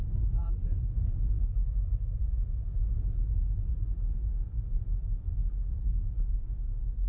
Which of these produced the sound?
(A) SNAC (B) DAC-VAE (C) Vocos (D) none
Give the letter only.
C